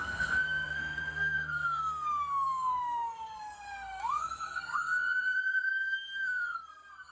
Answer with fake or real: fake